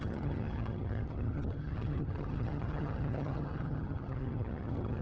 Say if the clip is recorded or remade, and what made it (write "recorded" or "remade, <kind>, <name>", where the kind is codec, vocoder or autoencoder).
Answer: remade, vocoder, HiFi-GAN